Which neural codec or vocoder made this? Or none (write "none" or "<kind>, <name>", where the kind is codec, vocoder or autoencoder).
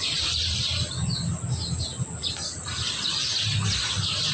none